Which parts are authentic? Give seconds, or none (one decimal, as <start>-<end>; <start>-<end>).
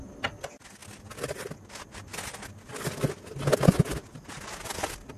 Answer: 0.0-5.2